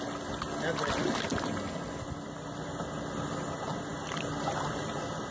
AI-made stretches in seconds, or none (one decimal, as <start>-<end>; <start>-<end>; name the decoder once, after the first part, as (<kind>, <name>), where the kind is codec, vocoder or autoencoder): none